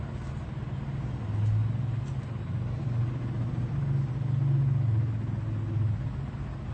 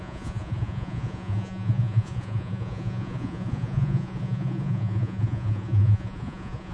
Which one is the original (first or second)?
first